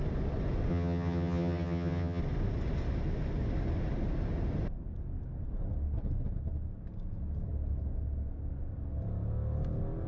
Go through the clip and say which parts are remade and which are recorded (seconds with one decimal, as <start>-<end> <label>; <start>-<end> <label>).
0.0-0.7 recorded; 0.7-2.2 remade; 2.2-10.1 recorded